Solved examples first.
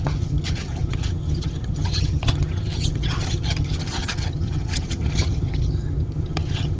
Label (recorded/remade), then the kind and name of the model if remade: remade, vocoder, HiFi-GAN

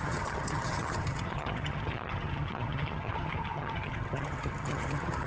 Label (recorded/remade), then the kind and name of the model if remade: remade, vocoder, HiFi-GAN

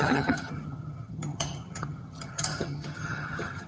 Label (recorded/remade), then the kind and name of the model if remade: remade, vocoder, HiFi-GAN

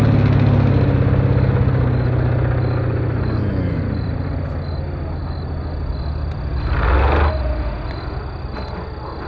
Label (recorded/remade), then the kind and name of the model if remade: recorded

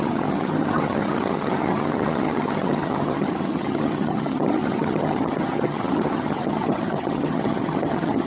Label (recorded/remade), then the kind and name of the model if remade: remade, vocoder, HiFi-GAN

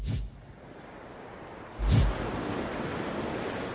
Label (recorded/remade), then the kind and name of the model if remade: recorded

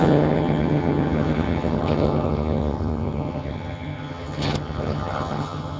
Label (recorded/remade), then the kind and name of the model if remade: remade, vocoder, HiFi-GAN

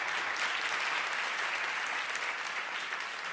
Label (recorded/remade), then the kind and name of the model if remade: recorded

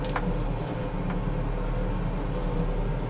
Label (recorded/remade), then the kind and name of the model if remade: recorded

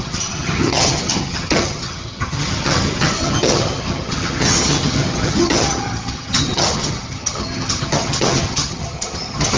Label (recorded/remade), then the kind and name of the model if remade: remade, vocoder, HiFi-GAN